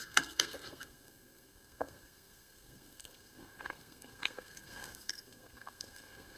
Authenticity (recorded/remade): remade